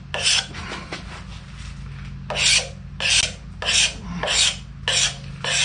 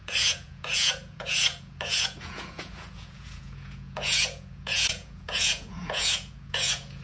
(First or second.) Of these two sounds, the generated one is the second